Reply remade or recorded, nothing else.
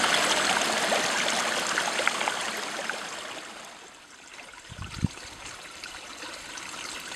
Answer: recorded